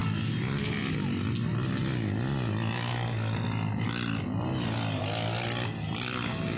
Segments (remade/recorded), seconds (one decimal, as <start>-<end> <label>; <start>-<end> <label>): 0.0-6.6 recorded